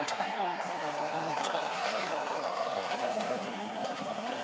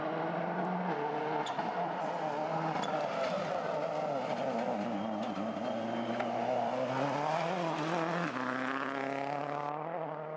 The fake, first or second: first